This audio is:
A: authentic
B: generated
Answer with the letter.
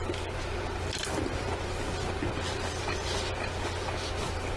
A